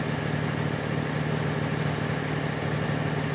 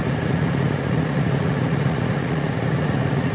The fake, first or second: second